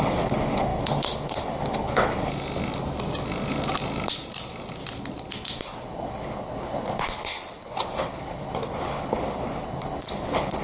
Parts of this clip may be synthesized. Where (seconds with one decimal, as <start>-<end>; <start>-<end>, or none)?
0.0-2.3; 5.6-10.6